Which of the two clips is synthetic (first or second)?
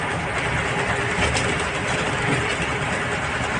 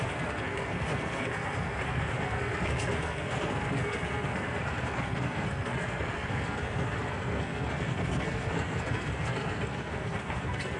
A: second